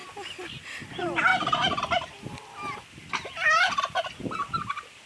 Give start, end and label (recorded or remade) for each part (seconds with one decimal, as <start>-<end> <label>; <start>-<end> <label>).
0.0-5.1 recorded